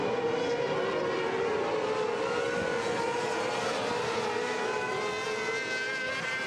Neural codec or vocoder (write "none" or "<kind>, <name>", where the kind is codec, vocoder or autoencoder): none